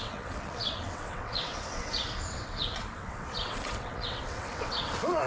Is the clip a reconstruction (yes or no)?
yes